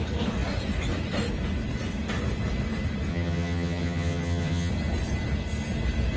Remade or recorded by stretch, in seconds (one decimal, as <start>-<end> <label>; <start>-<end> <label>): 0.0-3.1 recorded; 3.1-4.7 remade; 4.7-6.2 recorded